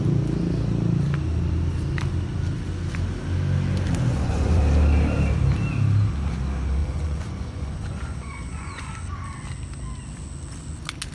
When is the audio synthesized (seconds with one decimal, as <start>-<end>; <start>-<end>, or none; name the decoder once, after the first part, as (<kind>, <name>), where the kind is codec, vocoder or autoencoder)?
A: 4.1-4.6 (vocoder, Vocos); 6.8-8.9